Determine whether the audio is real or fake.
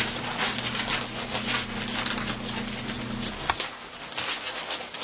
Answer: real